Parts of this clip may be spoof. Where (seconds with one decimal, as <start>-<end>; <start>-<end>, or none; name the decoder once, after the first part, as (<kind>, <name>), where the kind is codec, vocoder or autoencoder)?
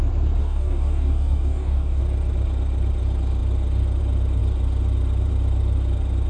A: 0.4-2.0 (codec, DAC)